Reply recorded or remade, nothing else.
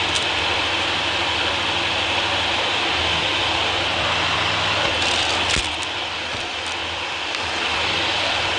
recorded